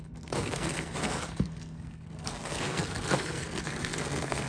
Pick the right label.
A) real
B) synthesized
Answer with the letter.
B